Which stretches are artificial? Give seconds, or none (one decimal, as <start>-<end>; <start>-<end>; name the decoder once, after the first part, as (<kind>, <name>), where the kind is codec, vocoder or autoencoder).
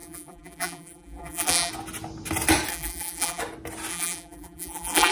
0.0-1.7 (vocoder, BigVGAN v2); 2.7-3.4; 3.9-5.1